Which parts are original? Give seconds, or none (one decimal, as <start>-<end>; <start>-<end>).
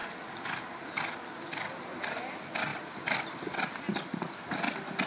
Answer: 0.6-2.7; 3.6-5.1